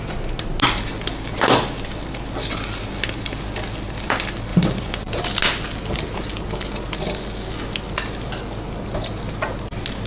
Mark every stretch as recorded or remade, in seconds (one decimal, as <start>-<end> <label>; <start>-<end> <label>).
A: 0.0-4.5 recorded; 4.5-5.2 remade; 5.2-10.1 recorded